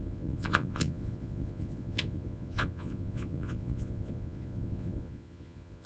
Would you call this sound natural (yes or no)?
no